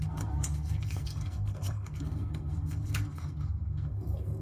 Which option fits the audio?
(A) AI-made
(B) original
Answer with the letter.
A